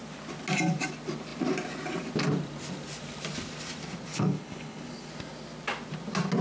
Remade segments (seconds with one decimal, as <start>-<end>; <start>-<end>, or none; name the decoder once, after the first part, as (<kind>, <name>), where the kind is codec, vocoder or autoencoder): 4.1-5.1 (codec, HILCodec)